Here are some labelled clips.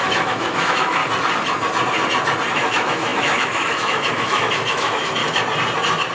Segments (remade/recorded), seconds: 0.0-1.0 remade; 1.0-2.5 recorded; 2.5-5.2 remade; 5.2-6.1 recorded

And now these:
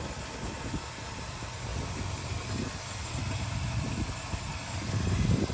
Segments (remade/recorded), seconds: 0.0-5.5 recorded